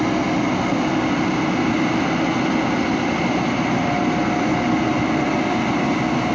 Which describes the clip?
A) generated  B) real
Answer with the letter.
B